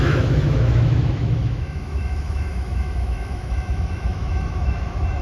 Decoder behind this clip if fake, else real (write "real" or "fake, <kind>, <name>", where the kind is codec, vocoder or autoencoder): fake, autoencoder, DAC-VAE